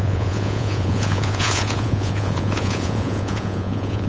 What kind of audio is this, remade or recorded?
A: remade